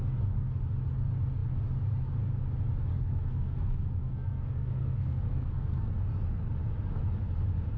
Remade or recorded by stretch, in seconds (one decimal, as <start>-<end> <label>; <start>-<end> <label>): 0.0-2.9 recorded; 2.9-5.9 remade; 5.9-7.8 recorded